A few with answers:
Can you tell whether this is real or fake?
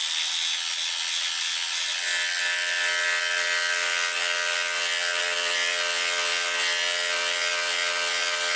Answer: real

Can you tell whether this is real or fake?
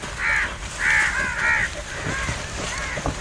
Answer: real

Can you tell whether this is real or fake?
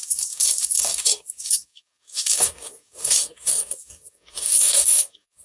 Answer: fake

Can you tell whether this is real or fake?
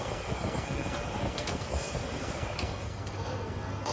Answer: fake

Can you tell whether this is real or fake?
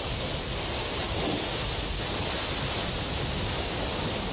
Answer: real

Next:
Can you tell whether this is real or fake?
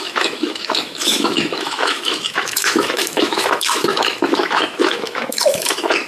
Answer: fake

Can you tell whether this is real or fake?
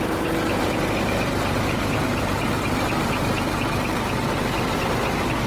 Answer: fake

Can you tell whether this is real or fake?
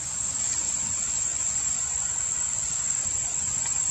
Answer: fake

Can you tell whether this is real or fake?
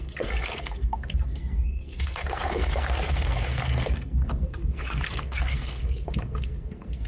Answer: fake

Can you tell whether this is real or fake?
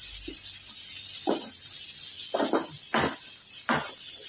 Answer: real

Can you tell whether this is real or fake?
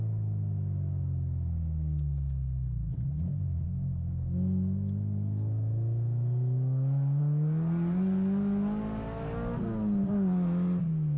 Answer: real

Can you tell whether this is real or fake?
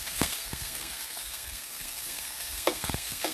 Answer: fake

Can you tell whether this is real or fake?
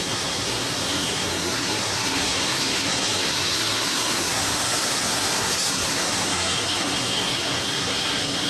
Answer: fake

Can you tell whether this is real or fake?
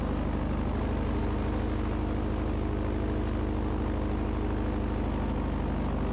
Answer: real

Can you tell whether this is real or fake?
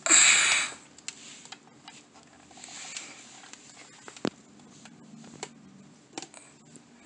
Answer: real